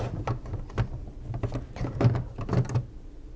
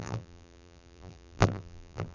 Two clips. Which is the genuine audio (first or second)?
first